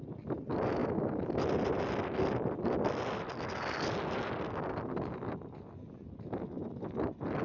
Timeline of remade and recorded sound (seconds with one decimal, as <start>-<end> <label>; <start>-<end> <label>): 0.0-7.4 recorded